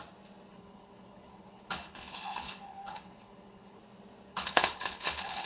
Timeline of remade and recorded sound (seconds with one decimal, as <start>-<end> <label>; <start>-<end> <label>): 0.0-0.5 recorded; 0.5-3.8 remade; 3.8-4.3 recorded; 4.3-5.5 remade

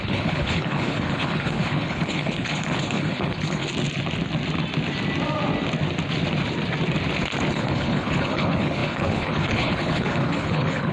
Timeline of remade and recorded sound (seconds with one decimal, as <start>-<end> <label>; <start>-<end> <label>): 0.0-3.7 remade; 3.7-7.5 recorded; 7.5-10.9 remade

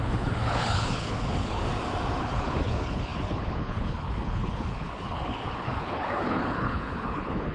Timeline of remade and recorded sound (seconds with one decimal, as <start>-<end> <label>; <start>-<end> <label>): 0.0-1.6 remade; 1.6-2.2 recorded; 2.2-7.5 remade

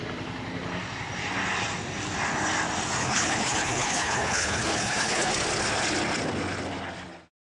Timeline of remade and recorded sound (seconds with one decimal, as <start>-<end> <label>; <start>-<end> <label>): 0.0-3.0 recorded; 3.0-5.3 remade; 5.3-7.5 recorded

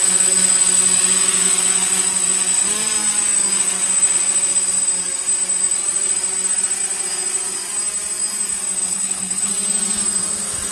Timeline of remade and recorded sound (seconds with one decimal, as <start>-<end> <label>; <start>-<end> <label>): 0.0-8.8 recorded; 8.8-9.5 remade; 9.5-10.7 recorded

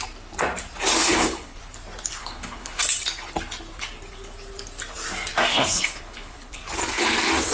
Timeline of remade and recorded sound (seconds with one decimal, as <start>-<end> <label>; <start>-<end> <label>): 0.0-1.0 recorded; 1.0-1.6 remade; 1.6-2.2 recorded; 2.2-2.8 remade; 2.8-5.5 recorded; 5.5-6.6 remade; 6.6-7.5 recorded

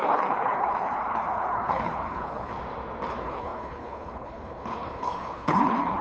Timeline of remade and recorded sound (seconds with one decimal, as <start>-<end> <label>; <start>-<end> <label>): 0.0-2.5 remade; 2.5-3.1 recorded; 3.1-6.0 remade

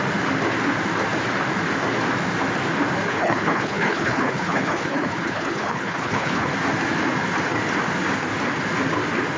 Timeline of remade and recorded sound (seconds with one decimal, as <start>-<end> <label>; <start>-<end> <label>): 0.0-3.1 recorded; 3.1-6.5 remade; 6.5-9.4 recorded